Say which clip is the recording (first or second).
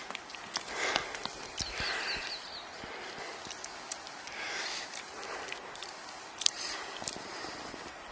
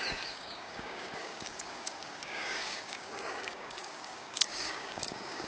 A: first